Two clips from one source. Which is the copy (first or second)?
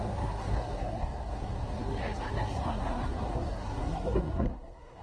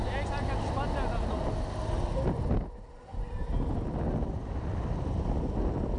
first